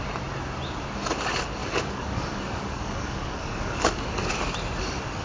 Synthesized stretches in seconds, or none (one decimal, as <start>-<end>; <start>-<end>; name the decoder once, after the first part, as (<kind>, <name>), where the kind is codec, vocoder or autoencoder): 1.6-4.3 (codec, DAC)

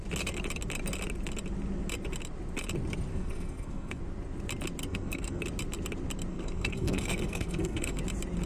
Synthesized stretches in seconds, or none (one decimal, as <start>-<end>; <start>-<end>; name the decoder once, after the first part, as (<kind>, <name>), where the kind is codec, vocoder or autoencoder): 3.1-4.0 (codec, SNAC); 4.8-5.4; 6.3-8.0

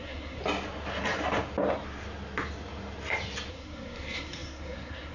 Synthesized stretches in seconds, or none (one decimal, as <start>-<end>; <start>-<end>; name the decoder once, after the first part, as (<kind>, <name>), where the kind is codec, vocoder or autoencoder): 0.0-0.4 (codec, SNAC); 3.5-5.1

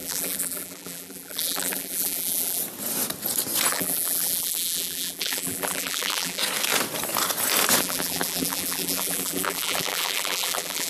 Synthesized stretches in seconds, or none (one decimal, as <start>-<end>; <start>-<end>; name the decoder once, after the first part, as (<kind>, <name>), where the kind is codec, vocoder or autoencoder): 0.0-2.6 (vocoder, BigVGAN v2); 3.7-6.4; 7.8-10.9

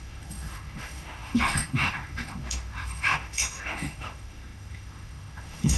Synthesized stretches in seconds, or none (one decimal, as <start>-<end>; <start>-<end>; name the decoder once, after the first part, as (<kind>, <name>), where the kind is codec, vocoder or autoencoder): 0.0-5.8 (autoencoder, DAC-VAE)